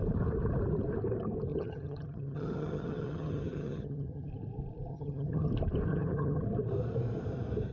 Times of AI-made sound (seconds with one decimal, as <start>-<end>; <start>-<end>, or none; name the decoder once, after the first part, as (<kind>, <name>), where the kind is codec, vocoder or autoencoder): 1.5-4.3 (vocoder, HiFi-GAN); 4.9-5.5; 5.9-6.4